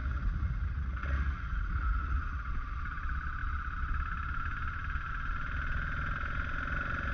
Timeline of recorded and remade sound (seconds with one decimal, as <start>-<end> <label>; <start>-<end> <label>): 0.0-2.5 remade; 2.5-7.1 recorded